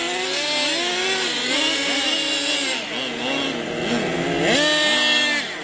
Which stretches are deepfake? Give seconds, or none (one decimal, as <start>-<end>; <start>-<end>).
none